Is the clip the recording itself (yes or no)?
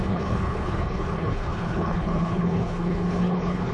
no